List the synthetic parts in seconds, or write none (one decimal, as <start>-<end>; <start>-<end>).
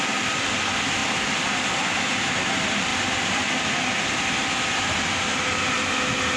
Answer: none